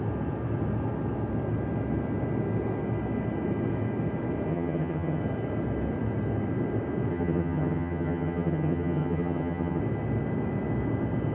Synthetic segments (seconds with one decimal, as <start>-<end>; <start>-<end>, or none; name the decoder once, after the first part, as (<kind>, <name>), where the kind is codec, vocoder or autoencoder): 4.5-5.2 (vocoder, HiFi-GAN); 7.1-9.8